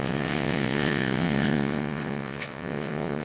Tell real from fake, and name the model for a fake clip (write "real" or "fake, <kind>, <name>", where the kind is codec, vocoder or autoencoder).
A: fake, vocoder, WaveNeXt